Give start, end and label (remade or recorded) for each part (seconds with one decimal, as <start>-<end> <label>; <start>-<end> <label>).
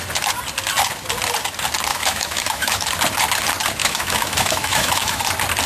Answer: 0.0-1.9 recorded; 1.9-2.9 remade; 2.9-3.8 recorded; 3.8-5.2 remade; 5.2-5.7 recorded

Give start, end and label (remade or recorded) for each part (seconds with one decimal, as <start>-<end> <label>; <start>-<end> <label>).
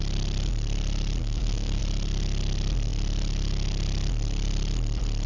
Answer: 0.0-1.2 recorded; 1.2-1.8 remade; 1.8-5.3 recorded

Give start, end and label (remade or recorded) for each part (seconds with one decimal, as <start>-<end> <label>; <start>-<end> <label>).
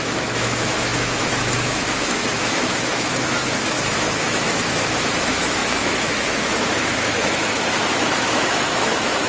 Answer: 0.0-9.3 remade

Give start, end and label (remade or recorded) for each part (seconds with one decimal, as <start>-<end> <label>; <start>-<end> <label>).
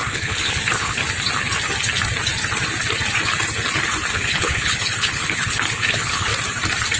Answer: 0.0-1.0 remade; 1.0-4.1 recorded; 4.1-6.3 remade; 6.3-7.0 recorded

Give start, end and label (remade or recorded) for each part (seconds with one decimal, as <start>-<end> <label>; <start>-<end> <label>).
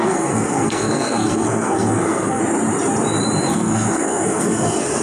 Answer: 0.0-2.4 remade; 2.4-3.5 recorded; 3.5-5.0 remade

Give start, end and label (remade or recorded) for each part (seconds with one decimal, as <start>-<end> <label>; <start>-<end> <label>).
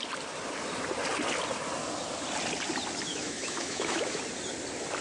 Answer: 0.0-3.1 recorded; 3.1-4.2 remade; 4.2-5.0 recorded